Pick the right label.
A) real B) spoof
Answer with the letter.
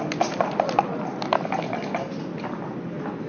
A